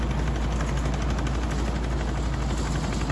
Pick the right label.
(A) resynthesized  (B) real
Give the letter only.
B